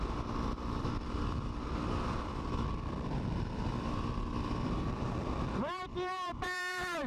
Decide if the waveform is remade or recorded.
remade